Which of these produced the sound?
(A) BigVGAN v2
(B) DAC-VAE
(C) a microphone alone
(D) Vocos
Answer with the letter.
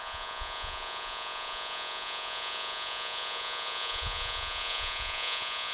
D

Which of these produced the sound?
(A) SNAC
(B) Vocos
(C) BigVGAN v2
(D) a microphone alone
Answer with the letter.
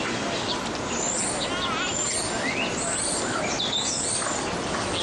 D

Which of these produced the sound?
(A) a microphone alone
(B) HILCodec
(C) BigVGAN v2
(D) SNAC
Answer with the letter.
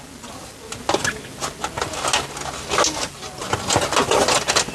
A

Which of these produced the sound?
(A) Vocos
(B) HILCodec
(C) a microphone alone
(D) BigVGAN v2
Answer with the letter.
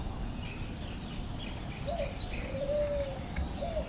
C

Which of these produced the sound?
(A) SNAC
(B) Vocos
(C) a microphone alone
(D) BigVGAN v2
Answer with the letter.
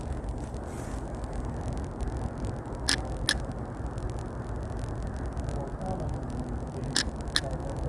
C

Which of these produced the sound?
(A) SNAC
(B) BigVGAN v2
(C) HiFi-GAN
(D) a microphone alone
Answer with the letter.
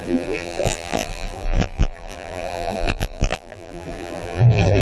B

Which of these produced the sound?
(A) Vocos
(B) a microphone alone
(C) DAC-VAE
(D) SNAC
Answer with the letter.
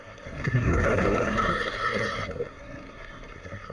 D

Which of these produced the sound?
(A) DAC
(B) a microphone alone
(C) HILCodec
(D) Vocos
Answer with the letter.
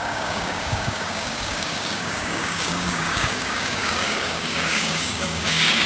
A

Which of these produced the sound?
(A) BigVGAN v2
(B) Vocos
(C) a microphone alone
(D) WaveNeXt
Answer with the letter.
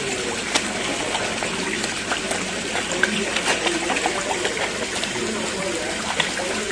C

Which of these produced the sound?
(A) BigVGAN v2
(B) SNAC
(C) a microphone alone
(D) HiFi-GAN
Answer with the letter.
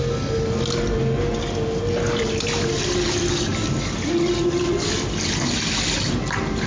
C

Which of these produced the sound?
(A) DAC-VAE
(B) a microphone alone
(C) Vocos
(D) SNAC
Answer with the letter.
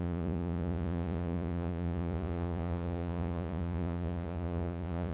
C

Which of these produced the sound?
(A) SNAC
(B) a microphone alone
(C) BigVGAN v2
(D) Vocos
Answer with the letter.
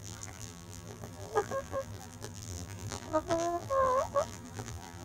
C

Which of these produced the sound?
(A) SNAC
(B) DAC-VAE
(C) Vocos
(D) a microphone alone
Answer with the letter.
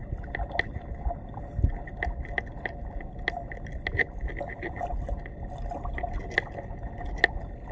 D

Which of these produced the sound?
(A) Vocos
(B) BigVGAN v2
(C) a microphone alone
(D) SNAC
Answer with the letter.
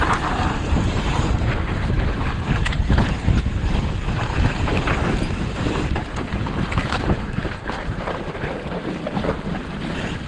B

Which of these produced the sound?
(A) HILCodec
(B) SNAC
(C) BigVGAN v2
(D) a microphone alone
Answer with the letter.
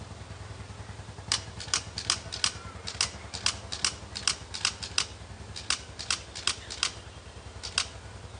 D